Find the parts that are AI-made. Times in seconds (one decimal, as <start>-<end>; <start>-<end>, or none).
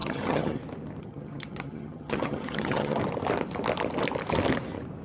0.0-0.6; 1.0-3.0